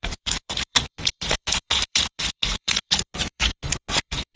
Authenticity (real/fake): fake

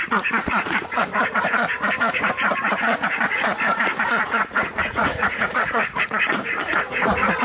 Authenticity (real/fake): fake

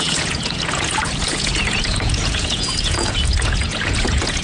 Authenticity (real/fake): fake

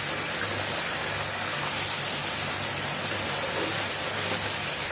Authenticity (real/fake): real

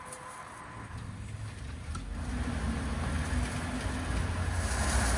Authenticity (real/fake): real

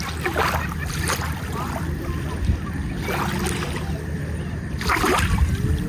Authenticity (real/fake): real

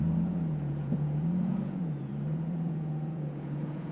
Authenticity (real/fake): fake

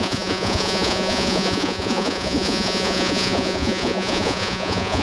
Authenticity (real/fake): fake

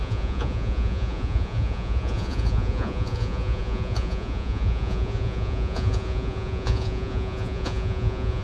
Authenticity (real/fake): fake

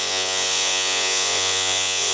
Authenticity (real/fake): fake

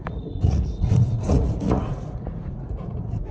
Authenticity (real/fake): fake